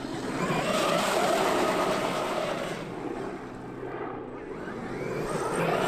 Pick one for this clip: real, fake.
real